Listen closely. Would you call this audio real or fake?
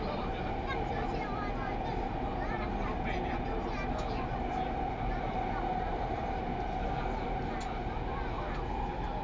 real